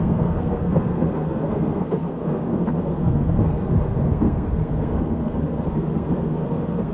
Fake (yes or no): yes